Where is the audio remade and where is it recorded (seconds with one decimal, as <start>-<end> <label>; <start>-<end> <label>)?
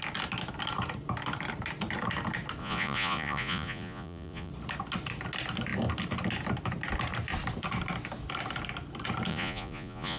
0.0-2.6 recorded; 2.6-4.5 remade; 4.5-9.3 recorded; 9.3-10.2 remade